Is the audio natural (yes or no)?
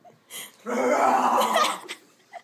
yes